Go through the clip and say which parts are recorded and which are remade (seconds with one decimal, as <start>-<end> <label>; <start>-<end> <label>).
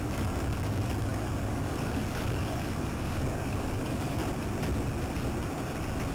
0.0-4.2 remade; 4.2-6.1 recorded